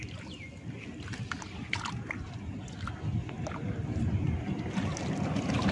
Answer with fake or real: real